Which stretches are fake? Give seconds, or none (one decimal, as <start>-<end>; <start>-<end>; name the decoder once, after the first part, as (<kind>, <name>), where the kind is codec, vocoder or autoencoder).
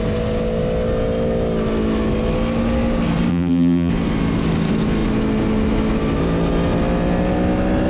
3.3-3.9 (vocoder, BigVGAN v2)